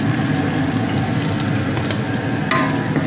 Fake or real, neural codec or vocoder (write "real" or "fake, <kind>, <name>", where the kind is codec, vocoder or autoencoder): real